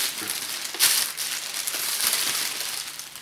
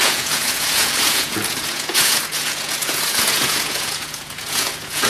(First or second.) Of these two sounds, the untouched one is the first